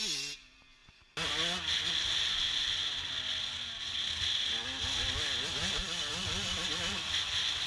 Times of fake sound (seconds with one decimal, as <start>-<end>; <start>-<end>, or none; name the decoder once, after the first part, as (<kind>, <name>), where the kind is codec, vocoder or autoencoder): 4.6-7.1 (vocoder, BigVGAN v2)